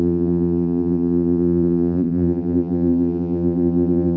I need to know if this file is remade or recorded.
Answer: remade